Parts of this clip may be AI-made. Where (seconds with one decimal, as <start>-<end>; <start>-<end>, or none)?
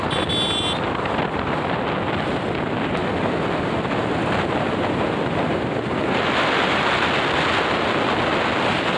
none